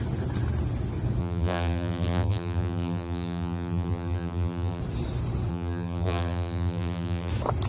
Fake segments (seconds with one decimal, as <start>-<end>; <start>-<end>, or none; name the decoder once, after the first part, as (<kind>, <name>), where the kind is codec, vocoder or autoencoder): 1.2-4.8 (vocoder, BigVGAN v2); 5.5-7.3